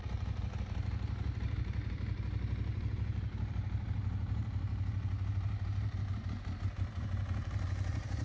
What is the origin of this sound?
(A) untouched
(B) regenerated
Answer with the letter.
B